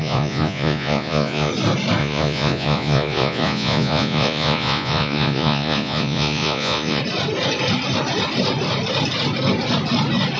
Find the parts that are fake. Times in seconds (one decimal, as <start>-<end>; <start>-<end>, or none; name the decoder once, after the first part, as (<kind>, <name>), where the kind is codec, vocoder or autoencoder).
0.0-1.5 (vocoder, Vocos); 2.0-7.0